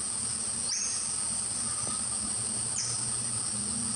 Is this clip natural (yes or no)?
yes